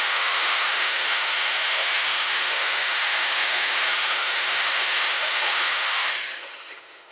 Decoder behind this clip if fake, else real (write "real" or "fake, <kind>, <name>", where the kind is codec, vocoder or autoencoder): fake, autoencoder, DAC-VAE